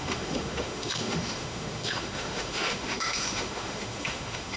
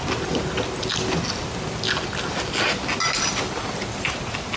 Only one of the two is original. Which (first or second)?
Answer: second